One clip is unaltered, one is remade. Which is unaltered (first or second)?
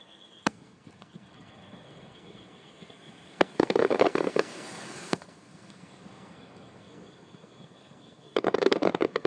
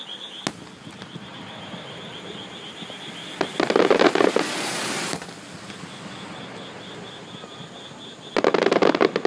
second